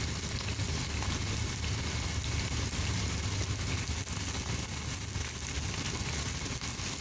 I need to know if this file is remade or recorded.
recorded